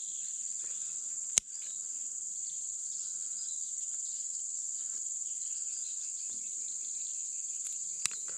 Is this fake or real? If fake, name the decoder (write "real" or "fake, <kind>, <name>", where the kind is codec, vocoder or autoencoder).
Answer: real